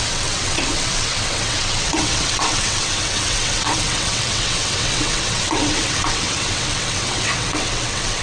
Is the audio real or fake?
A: fake